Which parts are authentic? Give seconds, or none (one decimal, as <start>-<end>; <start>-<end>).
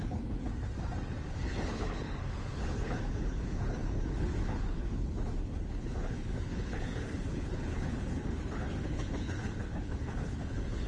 0.5-1.3